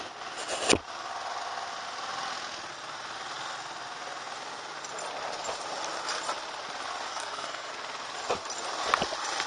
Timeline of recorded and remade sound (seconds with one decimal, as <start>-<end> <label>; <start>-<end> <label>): 0.0-7.1 recorded; 7.1-7.7 remade; 7.7-9.5 recorded